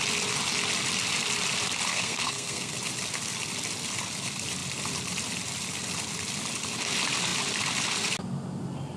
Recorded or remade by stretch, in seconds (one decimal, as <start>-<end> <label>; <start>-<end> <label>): 0.0-1.9 recorded; 1.9-2.7 remade; 2.7-9.0 recorded